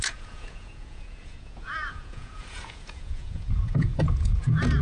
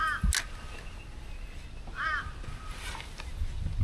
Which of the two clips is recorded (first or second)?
second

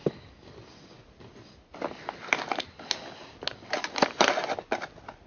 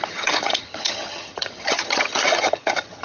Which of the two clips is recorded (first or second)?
first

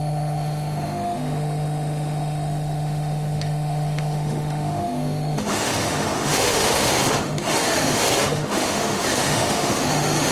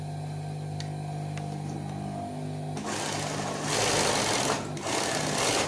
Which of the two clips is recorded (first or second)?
second